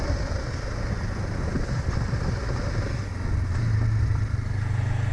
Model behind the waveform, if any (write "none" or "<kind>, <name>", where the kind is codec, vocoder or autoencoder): none